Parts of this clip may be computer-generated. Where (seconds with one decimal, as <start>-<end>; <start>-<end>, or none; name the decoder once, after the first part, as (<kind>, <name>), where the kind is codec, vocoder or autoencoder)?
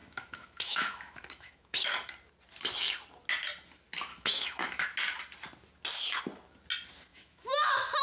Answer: 0.0-2.1 (autoencoder, DAC-VAE); 4.1-4.8; 7.1-8.0